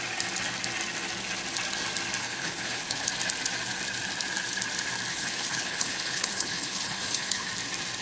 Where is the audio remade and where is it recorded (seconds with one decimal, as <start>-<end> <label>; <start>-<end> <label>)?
0.0-2.2 recorded; 2.2-3.1 remade; 3.1-5.1 recorded; 5.1-7.5 remade; 7.5-8.0 recorded